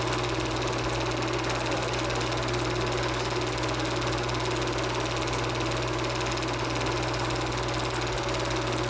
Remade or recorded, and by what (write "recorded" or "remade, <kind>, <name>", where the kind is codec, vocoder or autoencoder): recorded